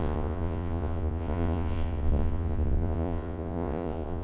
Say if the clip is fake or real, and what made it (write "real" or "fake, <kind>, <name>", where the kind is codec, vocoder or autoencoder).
fake, vocoder, Vocos